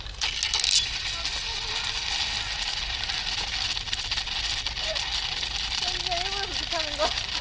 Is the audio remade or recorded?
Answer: recorded